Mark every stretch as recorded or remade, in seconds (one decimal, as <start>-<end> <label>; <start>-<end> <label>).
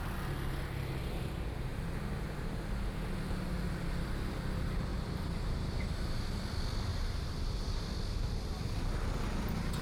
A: 0.0-4.9 recorded; 4.9-6.2 remade; 6.2-6.9 recorded; 6.9-7.8 remade; 7.8-9.8 recorded